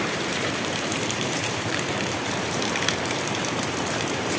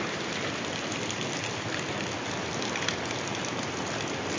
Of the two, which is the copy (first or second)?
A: first